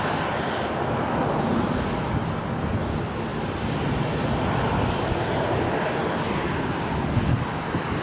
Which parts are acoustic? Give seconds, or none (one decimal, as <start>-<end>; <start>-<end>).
0.0-8.0